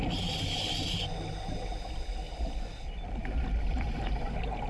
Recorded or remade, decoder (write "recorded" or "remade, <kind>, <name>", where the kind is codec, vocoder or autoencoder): recorded